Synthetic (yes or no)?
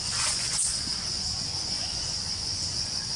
yes